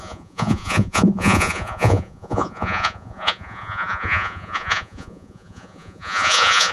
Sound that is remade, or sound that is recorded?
remade